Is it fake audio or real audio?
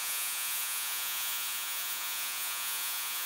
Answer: fake